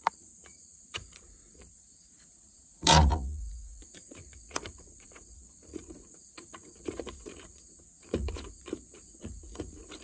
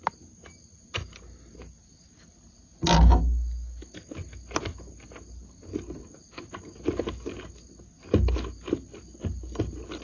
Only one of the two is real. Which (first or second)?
second